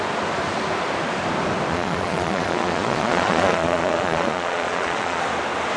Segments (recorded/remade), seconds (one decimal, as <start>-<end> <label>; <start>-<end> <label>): 0.0-1.7 recorded; 1.7-5.2 remade; 5.2-5.8 recorded